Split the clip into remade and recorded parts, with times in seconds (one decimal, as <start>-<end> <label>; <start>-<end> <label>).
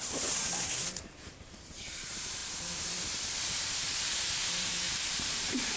0.0-5.8 remade